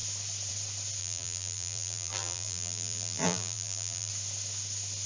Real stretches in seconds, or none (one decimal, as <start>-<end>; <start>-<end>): 0.0-1.0; 4.1-5.1